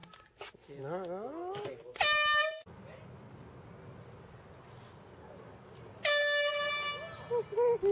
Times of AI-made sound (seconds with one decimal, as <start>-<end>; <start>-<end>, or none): none